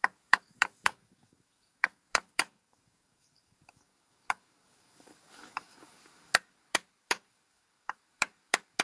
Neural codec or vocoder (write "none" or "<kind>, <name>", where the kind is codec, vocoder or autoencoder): codec, DAC